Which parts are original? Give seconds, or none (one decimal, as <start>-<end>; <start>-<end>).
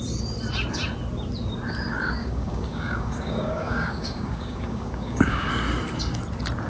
0.0-2.2; 5.5-6.7